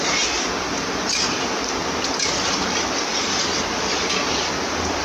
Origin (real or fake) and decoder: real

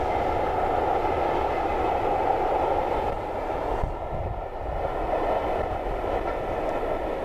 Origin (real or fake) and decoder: real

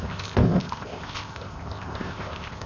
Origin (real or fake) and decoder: fake, codec, ZipCodec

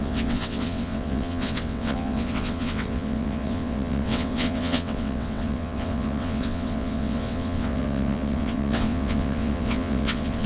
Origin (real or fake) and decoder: fake, vocoder, WaveNeXt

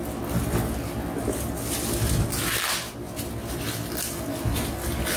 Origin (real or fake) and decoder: real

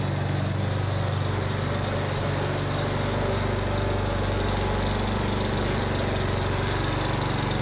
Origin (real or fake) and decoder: real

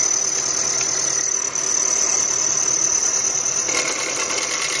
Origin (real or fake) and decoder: real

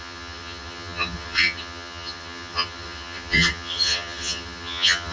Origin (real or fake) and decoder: fake, vocoder, HiFi-GAN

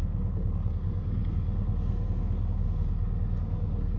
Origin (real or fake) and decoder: fake, codec, SNAC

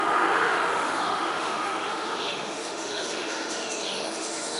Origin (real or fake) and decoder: fake, autoencoder, DAC-VAE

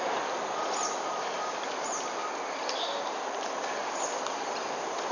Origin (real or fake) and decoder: real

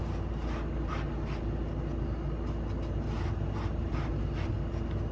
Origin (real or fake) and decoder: real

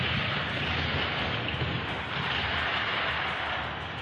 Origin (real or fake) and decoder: fake, vocoder, BigVGAN v2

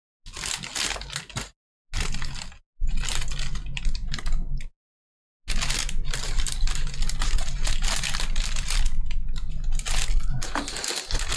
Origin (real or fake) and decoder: real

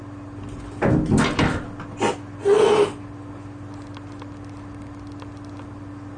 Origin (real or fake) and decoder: real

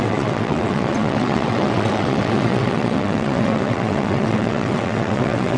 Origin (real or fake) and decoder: fake, vocoder, WaveNeXt